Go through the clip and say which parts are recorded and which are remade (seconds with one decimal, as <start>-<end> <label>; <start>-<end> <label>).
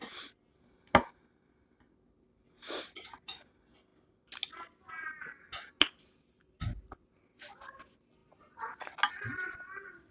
0.0-10.1 recorded